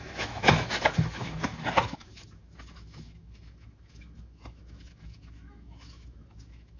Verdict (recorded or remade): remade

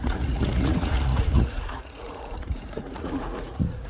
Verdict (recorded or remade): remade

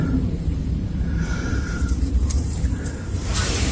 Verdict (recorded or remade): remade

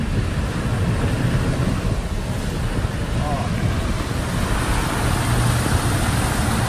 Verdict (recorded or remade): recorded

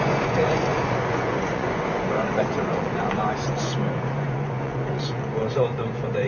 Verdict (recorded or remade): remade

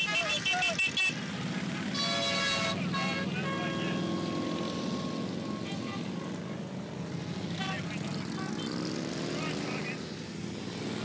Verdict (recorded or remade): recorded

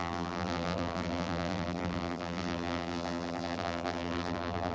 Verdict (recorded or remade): remade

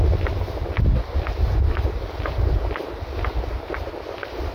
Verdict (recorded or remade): recorded